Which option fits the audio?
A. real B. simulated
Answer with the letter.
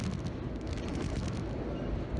A